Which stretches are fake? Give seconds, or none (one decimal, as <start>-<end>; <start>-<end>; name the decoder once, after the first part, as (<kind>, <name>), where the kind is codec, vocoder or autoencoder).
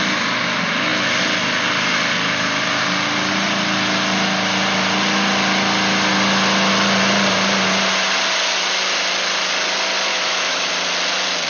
10.1-10.7 (autoencoder, DAC-VAE)